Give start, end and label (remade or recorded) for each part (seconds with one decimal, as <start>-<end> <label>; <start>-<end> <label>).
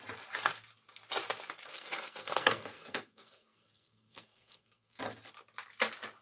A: 0.0-1.7 recorded; 1.7-5.0 remade; 5.0-6.2 recorded